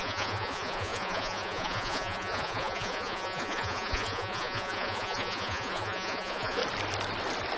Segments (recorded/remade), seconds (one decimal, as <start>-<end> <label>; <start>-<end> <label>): 0.0-6.6 remade; 6.6-7.6 recorded